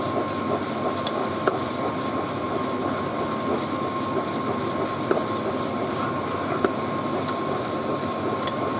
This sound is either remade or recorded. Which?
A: recorded